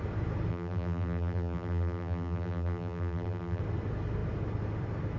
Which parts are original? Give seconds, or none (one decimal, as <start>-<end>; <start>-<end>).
0.0-0.5; 3.6-5.2